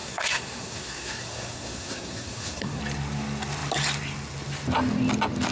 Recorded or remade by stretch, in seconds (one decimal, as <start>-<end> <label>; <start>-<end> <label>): 0.0-2.8 remade; 2.8-5.5 recorded